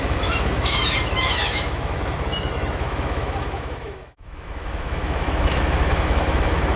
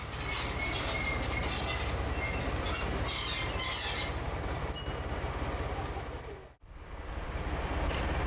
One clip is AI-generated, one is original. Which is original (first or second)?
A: second